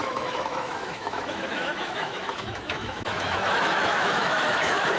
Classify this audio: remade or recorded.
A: remade